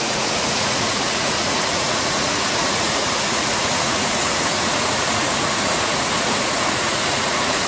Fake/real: fake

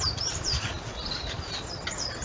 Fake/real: real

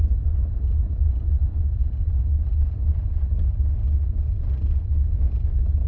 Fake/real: real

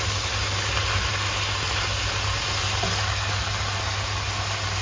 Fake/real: real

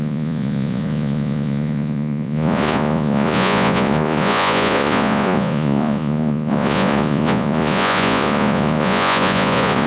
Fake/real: fake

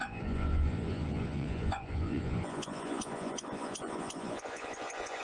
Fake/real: fake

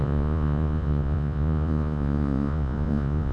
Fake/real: fake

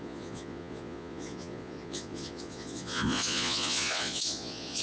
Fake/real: fake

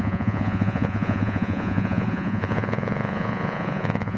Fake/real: fake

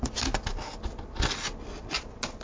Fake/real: real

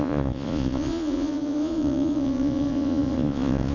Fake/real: fake